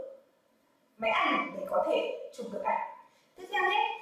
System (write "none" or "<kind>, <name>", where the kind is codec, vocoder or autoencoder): none